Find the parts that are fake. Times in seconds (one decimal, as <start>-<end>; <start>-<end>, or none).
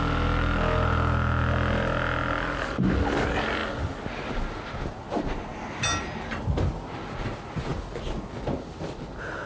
none